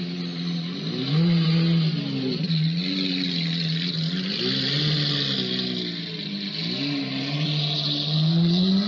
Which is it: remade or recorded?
recorded